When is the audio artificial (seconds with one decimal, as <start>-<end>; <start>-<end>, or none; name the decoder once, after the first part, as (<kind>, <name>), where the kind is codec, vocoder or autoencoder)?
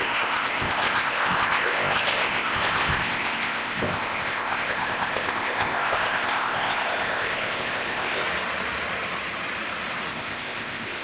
0.0-8.2 (codec, ZipCodec); 10.1-11.0